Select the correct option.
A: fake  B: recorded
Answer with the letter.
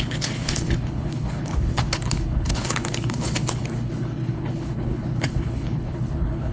A